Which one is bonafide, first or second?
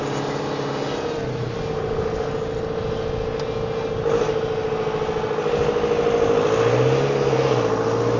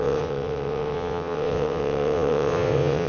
first